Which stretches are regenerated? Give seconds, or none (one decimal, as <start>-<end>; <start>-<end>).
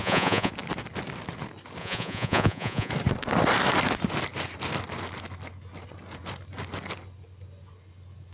0.0-0.5; 1.8-2.9